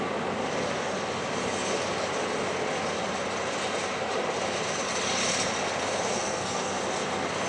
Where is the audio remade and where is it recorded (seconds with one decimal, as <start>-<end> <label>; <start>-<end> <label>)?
0.0-6.2 recorded; 6.2-6.8 remade; 6.8-7.5 recorded